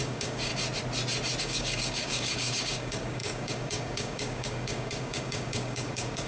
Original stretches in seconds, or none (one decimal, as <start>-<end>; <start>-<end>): 0.5-1.4